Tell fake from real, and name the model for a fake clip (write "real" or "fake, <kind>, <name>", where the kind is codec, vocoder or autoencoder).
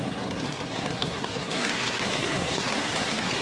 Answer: fake, codec, SNAC